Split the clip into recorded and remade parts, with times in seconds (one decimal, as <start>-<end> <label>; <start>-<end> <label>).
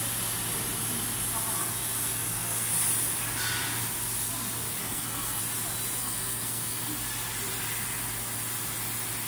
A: 0.0-1.6 recorded; 1.6-2.7 remade; 2.7-4.8 recorded; 4.8-5.4 remade; 5.4-6.0 recorded; 6.0-6.8 remade; 6.8-9.3 recorded